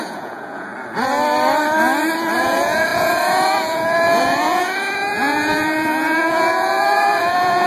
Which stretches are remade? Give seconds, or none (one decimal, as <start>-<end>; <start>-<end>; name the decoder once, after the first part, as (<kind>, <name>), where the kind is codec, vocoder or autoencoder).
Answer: 0.0-0.7 (vocoder, Vocos); 2.4-7.7